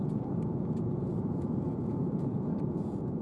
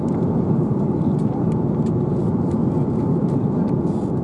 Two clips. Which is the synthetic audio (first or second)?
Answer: first